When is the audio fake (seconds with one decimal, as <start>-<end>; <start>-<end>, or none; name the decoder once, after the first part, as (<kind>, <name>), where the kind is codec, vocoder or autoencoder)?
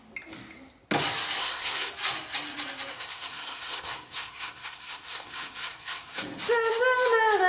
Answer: 1.4-1.9 (codec, SNAC); 2.9-6.2